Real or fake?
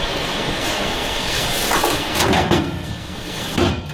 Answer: fake